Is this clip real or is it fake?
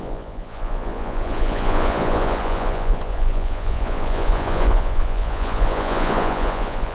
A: fake